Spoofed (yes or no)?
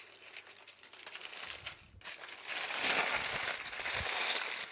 no